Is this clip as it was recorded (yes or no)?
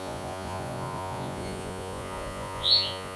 no